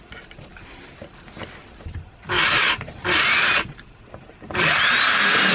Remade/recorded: recorded